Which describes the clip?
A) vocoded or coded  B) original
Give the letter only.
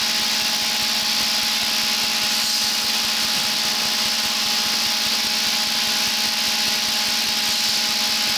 B